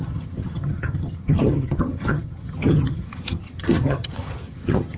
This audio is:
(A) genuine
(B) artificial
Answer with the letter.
B